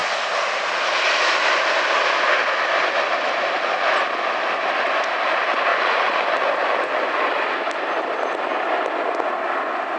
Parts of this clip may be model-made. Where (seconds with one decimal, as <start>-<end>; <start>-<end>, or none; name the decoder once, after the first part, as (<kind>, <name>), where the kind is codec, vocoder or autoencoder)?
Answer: 5.7-7.3 (vocoder, Vocos)